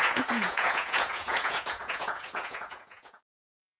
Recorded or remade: remade